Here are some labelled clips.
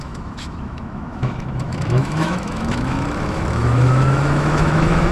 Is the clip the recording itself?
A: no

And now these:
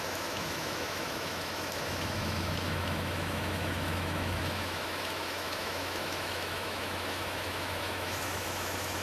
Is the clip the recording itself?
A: no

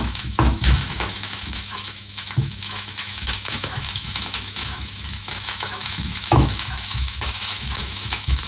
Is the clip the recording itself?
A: no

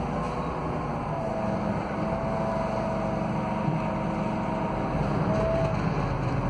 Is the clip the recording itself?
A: yes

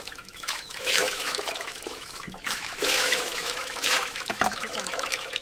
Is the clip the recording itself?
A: no